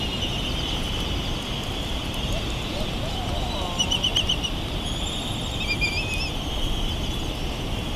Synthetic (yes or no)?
no